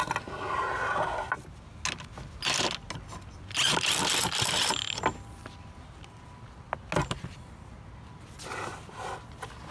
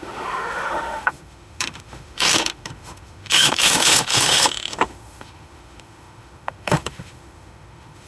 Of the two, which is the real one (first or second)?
first